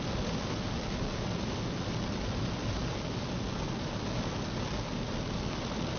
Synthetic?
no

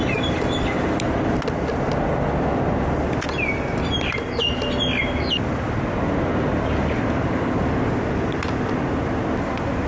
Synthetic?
no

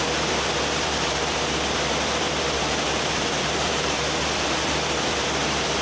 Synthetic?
yes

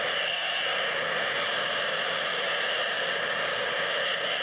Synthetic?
no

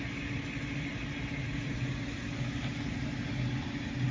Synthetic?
no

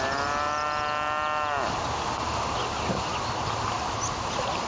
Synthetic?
no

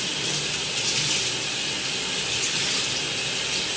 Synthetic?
no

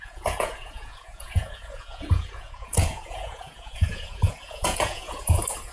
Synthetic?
yes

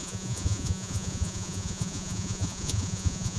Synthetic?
yes